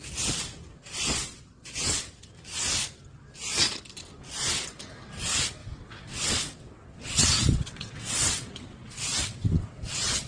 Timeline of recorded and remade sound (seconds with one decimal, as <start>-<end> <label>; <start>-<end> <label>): 0.0-1.0 recorded; 1.0-2.0 remade; 2.0-5.6 recorded; 5.6-10.3 remade